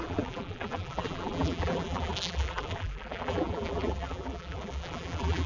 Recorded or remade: remade